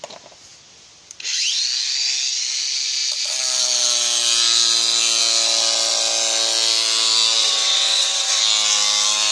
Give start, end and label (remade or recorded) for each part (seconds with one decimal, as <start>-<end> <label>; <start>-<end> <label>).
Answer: 0.0-7.4 recorded; 7.4-8.4 remade; 8.4-9.3 recorded